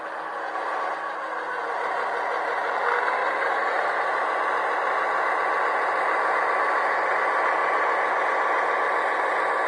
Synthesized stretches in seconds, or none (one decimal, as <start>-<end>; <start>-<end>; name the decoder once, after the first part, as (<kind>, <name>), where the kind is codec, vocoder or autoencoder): 1.6-2.7 (vocoder, BigVGAN v2); 3.2-3.9